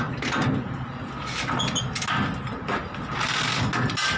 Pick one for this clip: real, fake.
real